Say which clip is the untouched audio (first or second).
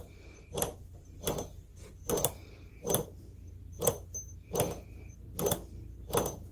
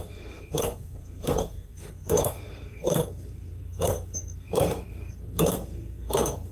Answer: first